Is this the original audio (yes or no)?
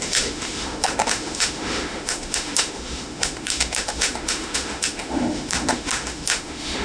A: no